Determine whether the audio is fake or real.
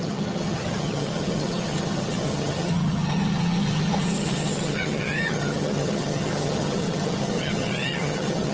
fake